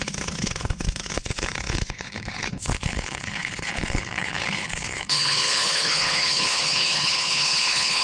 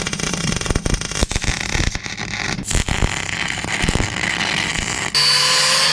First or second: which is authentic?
second